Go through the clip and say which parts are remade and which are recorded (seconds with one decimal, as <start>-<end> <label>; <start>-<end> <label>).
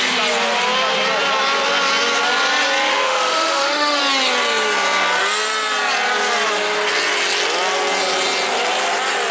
0.0-2.9 recorded; 2.9-4.0 remade; 4.0-9.3 recorded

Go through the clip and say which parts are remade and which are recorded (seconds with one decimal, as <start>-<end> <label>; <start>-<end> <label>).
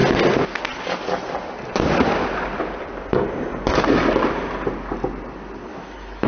0.0-5.7 recorded; 5.7-6.3 remade